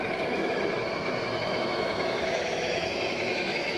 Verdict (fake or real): fake